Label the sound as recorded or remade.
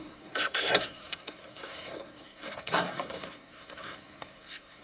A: remade